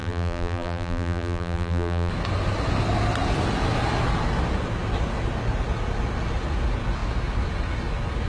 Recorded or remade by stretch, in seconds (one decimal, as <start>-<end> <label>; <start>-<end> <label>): 0.0-2.1 remade; 2.1-8.3 recorded